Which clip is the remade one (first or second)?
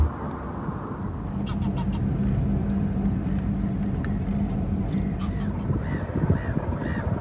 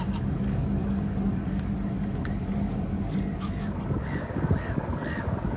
second